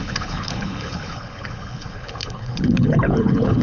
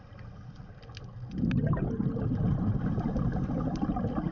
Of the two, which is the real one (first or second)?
second